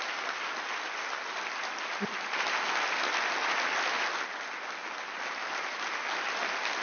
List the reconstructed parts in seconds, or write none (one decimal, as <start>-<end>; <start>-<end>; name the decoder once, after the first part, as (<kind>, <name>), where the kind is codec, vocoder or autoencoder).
none